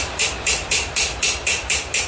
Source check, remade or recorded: recorded